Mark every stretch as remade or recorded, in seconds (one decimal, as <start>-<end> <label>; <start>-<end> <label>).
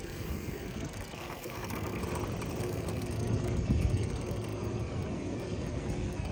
0.0-2.0 remade; 2.0-2.6 recorded; 2.6-6.3 remade